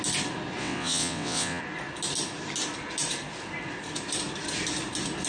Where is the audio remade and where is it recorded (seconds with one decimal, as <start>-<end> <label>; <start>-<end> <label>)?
0.0-0.6 recorded; 0.6-1.6 remade; 1.6-5.3 recorded